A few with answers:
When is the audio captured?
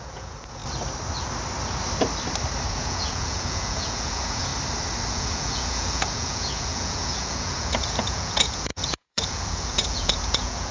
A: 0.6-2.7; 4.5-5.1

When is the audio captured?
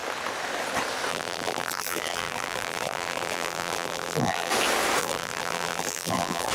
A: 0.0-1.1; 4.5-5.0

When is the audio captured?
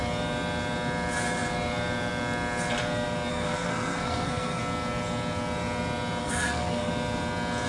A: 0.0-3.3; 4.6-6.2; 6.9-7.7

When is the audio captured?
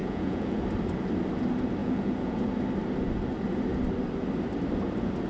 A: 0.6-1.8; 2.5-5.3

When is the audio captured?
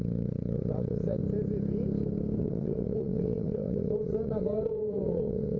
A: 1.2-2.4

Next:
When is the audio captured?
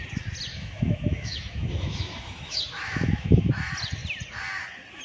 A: 0.0-0.5; 3.5-5.0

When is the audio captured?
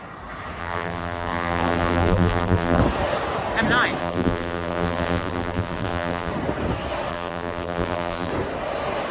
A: 0.0-0.6; 2.8-4.0; 6.3-7.1; 8.3-9.1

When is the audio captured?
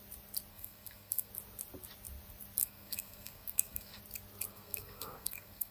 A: 0.0-0.5; 1.3-2.6; 4.0-4.5